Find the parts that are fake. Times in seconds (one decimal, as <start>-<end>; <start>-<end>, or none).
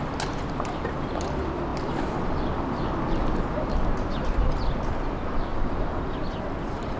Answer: none